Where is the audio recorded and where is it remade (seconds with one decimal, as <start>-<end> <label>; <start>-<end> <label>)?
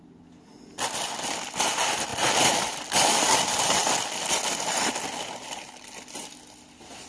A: 0.0-7.1 recorded